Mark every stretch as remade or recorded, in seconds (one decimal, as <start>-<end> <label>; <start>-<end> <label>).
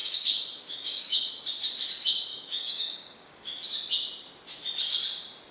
0.0-1.3 remade; 1.3-2.3 recorded; 2.3-3.6 remade; 3.6-5.5 recorded